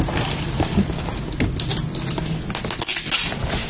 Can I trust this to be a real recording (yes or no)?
yes